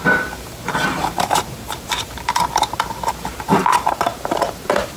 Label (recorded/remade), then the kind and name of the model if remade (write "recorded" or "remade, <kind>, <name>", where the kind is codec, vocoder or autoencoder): remade, vocoder, BigVGAN v2